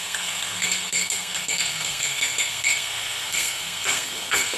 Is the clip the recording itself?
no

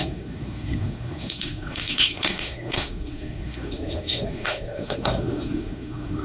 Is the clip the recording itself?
no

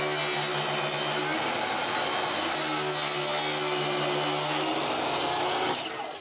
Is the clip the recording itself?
yes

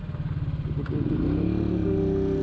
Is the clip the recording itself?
yes